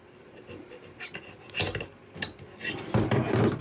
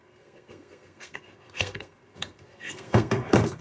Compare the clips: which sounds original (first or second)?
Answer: first